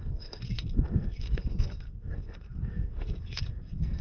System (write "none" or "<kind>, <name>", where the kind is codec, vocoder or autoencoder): codec, SNAC